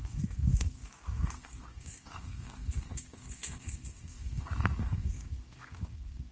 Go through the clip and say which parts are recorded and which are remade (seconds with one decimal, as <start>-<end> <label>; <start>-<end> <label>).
0.0-6.3 remade